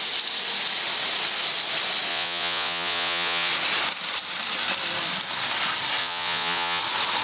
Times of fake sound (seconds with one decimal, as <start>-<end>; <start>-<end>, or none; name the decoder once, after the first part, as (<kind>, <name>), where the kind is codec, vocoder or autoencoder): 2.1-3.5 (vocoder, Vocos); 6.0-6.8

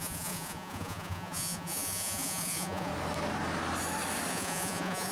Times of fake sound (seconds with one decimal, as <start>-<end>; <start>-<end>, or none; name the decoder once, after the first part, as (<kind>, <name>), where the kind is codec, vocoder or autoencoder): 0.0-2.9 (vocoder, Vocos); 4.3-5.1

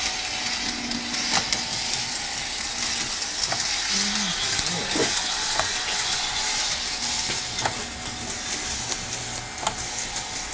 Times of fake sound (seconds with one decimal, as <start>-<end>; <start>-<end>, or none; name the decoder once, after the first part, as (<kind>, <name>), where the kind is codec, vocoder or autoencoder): 5.0-6.7 (vocoder, Vocos)